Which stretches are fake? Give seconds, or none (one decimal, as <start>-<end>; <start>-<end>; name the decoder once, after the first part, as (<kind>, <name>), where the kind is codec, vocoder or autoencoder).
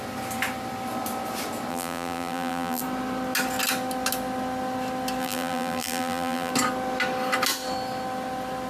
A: 1.7-2.8 (vocoder, BigVGAN v2); 5.2-6.5